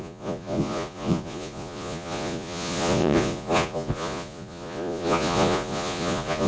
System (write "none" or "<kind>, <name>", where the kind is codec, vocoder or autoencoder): vocoder, Vocos